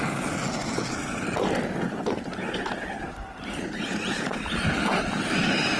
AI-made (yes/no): no